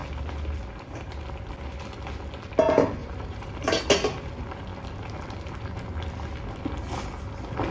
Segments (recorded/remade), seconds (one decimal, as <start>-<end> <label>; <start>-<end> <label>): 0.0-3.0 recorded; 3.0-3.8 remade; 3.8-7.7 recorded